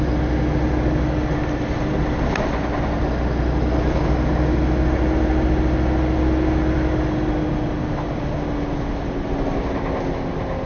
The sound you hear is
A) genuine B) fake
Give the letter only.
A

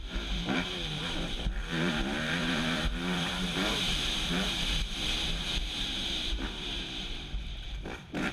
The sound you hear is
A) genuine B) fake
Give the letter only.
B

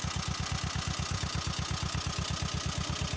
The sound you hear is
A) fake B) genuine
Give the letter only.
B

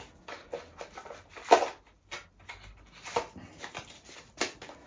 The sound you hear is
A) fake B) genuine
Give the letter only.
B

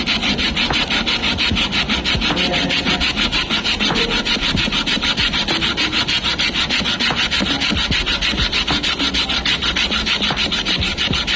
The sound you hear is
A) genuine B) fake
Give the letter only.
A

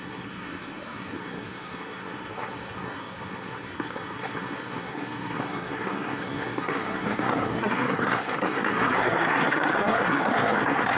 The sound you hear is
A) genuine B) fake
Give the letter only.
B